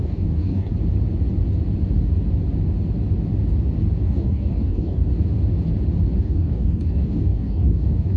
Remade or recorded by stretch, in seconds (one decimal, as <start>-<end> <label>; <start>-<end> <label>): 0.0-0.7 remade; 0.7-4.0 recorded; 4.0-5.1 remade; 5.1-6.2 recorded; 6.2-8.2 remade